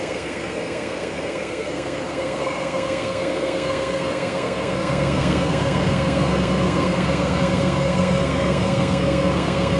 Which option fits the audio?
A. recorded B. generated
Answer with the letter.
B